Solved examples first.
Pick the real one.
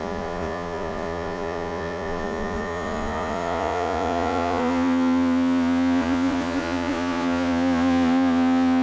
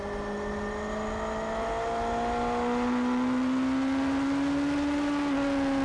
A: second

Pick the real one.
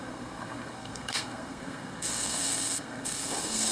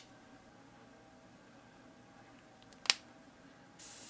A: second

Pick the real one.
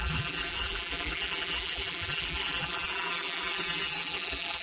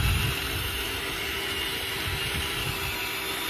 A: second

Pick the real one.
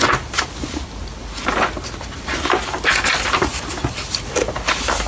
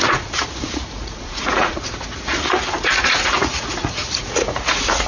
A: first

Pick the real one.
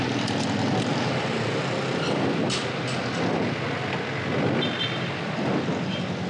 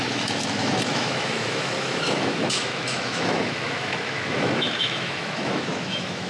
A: first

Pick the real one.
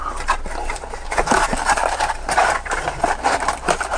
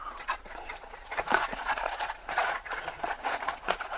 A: first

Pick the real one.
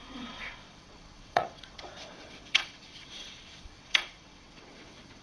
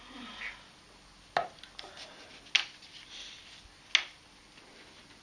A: second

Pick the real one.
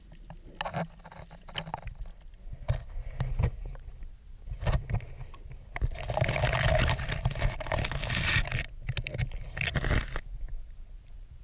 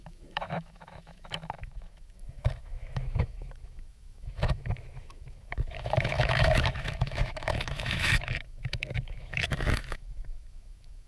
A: first